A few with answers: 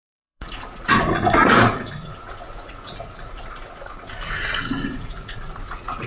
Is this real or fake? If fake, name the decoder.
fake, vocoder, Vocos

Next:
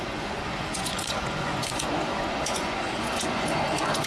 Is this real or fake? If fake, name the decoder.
fake, vocoder, Vocos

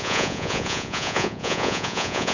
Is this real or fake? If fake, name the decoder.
fake, vocoder, Vocos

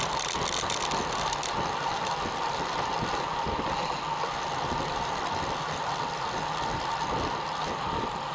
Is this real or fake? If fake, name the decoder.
real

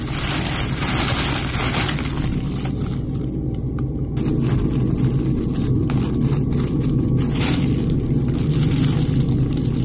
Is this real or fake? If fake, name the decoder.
real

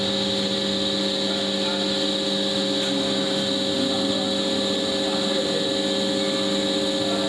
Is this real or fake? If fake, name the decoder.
real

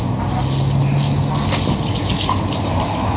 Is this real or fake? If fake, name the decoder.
real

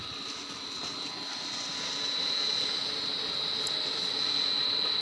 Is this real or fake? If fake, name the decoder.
real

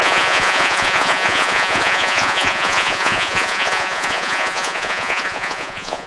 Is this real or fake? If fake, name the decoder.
fake, vocoder, Vocos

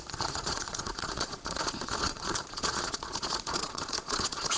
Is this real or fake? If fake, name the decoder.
fake, vocoder, Vocos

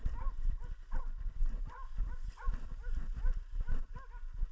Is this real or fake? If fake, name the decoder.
real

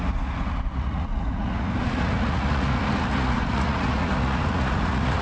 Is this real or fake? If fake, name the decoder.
fake, vocoder, Vocos